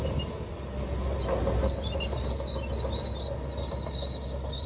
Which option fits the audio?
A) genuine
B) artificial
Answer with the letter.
A